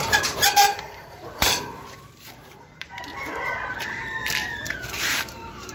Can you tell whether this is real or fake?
fake